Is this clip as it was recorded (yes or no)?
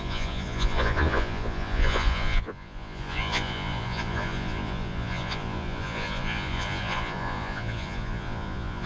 no